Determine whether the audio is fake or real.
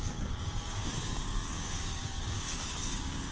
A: fake